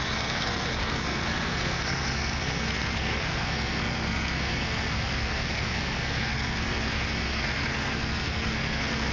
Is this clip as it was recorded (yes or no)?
no